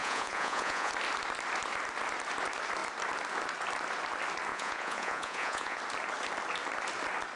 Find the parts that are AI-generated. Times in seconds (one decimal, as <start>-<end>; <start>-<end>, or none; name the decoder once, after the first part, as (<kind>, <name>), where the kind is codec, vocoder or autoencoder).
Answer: 0.0-0.9 (vocoder, Vocos); 4.5-5.8